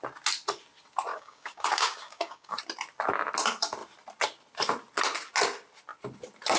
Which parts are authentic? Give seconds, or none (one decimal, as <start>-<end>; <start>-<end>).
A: 0.0-1.1; 2.6-6.6